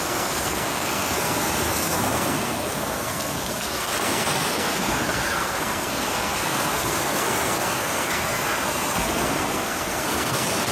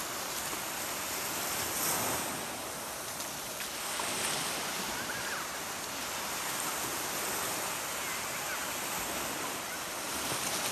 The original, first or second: second